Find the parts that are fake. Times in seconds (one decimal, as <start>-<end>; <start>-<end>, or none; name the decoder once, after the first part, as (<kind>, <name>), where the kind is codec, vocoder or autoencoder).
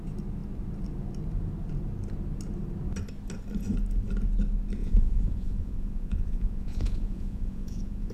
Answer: 4.8-8.1 (vocoder, Vocos)